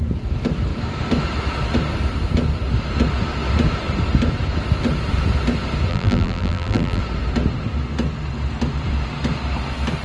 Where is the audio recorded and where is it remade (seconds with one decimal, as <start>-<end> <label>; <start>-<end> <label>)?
0.0-5.9 recorded; 5.9-7.0 remade; 7.0-10.0 recorded